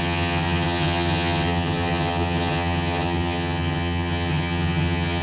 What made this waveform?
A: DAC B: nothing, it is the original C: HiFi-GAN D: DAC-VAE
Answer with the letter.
C